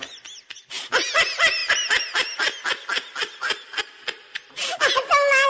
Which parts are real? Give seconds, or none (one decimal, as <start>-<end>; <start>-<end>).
0.0-5.5